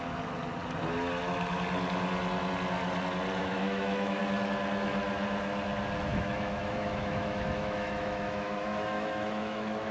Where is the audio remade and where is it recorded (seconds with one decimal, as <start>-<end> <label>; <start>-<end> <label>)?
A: 0.0-3.4 recorded; 3.4-4.2 remade; 4.2-6.1 recorded; 6.1-9.9 remade